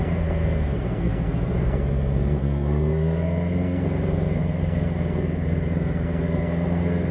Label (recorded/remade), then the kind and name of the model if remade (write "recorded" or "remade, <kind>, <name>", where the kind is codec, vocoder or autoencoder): remade, codec, SNAC